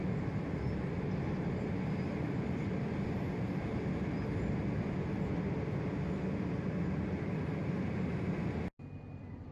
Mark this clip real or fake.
real